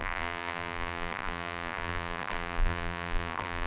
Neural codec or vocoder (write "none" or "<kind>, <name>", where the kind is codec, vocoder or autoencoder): vocoder, BigVGAN v2